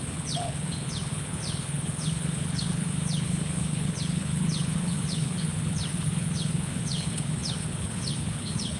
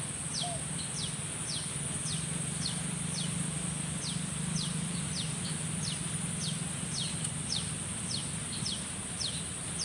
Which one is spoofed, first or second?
first